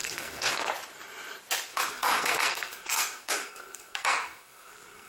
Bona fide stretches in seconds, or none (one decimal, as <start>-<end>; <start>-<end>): 0.7-1.7